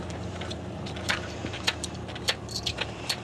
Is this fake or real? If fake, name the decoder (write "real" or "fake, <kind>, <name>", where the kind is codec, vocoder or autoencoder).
fake, vocoder, BigVGAN v2